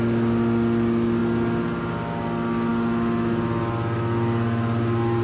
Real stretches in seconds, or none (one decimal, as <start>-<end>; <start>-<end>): 0.0-5.2